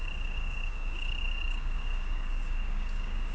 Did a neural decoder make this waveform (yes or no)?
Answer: yes